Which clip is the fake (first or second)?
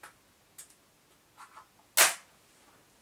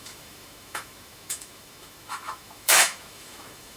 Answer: second